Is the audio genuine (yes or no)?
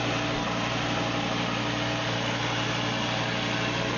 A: yes